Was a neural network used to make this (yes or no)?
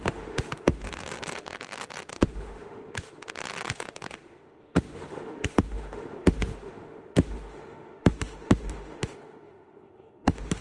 yes